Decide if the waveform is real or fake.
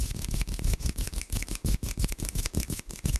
fake